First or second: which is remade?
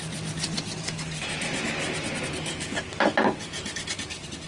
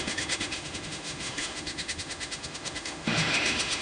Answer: second